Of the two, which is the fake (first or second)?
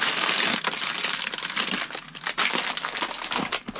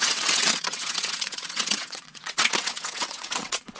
second